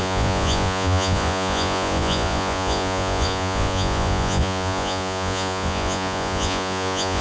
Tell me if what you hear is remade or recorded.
remade